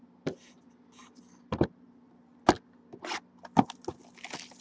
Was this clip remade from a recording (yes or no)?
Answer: no